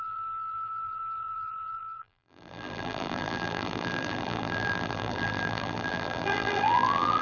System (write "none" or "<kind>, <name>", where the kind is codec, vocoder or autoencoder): vocoder, BigVGAN v2